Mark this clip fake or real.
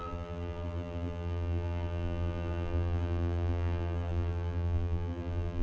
fake